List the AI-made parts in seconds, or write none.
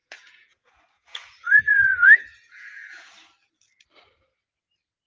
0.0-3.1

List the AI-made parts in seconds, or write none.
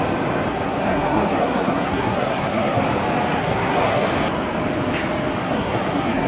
0.5-2.8; 3.4-4.1; 5.4-6.3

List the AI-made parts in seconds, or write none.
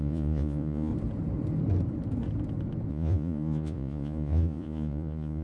0.0-0.9; 2.9-5.4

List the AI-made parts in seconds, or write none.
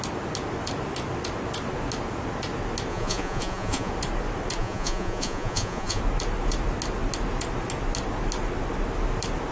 2.9-3.9; 4.6-6.0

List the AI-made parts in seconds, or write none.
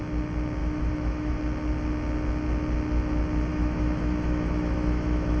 0.6-1.4; 3.5-5.4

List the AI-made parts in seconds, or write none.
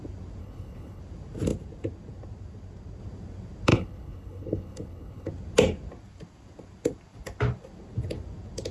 0.4-1.0; 3.7-5.3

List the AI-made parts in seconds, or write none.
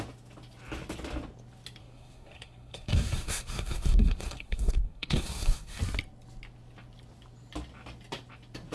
1.8-5.8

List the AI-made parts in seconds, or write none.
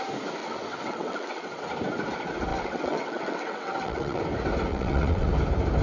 0.4-1.6; 2.5-4.2; 4.7-5.3